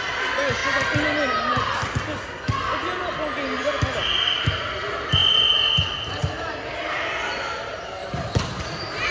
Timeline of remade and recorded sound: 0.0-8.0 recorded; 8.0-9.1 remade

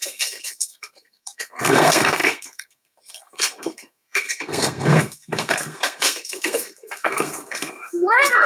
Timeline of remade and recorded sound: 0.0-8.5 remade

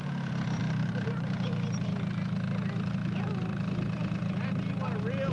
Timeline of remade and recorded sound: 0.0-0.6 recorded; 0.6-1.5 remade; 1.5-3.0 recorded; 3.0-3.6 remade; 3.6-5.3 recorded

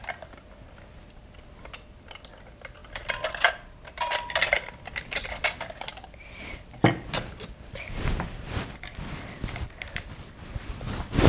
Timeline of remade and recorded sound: 0.0-2.8 remade; 2.8-4.3 recorded; 4.3-11.3 remade